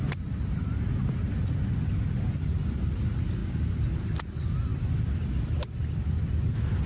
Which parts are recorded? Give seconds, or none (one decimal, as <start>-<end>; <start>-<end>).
0.0-6.9